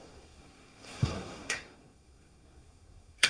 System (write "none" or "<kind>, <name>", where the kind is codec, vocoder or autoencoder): codec, SNAC